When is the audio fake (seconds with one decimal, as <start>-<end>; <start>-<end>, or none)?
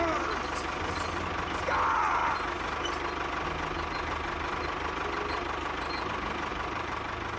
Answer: 6.5-7.4